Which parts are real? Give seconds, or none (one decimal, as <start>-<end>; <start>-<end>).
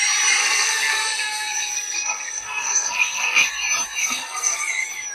0.0-0.4; 3.5-4.0; 4.6-5.1